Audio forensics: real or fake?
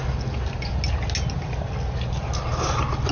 real